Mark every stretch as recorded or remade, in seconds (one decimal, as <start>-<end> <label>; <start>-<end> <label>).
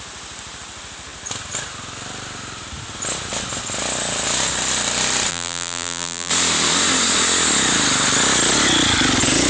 0.0-5.3 recorded; 5.3-6.3 remade; 6.3-9.5 recorded